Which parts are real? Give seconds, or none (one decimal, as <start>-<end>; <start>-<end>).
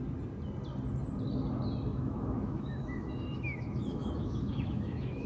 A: 0.0-1.9